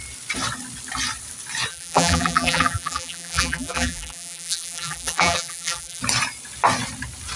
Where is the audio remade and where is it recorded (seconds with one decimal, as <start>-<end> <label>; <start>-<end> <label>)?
0.0-1.7 recorded; 1.7-6.0 remade; 6.0-7.4 recorded